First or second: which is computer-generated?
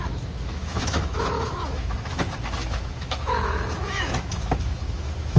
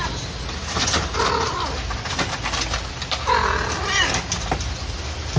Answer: first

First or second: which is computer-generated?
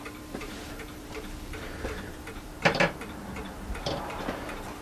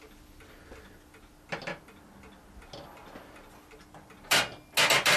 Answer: first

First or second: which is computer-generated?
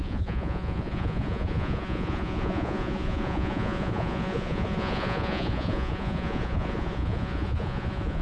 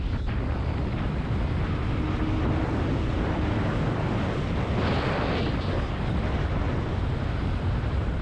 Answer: first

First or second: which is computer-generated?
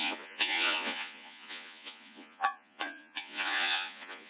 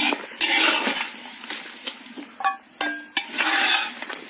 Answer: first